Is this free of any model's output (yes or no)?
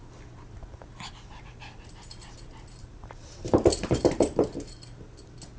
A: yes